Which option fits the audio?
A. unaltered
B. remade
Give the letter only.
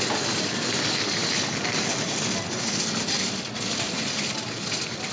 A